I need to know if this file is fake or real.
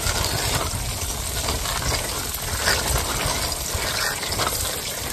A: real